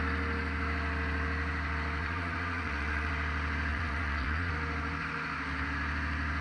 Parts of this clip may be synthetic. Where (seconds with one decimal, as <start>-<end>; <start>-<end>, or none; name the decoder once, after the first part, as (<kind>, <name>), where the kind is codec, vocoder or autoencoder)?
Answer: 2.0-3.1 (vocoder, Vocos); 3.7-4.5